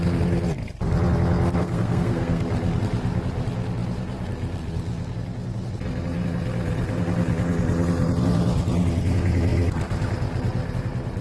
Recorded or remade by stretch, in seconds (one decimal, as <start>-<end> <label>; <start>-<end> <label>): 0.0-1.6 recorded; 1.6-2.4 remade; 2.4-11.2 recorded